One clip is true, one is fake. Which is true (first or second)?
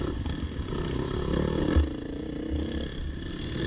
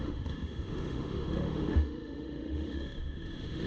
first